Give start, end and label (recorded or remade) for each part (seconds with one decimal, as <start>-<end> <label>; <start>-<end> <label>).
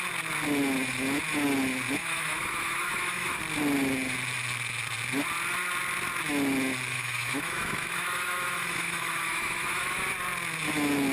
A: 0.0-2.0 recorded; 2.0-3.4 remade; 3.4-6.9 recorded; 6.9-10.0 remade; 10.0-11.1 recorded